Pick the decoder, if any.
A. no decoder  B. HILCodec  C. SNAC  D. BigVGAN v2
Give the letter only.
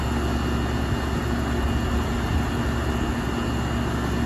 A